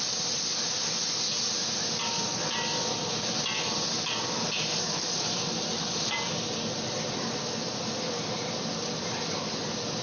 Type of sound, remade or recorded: recorded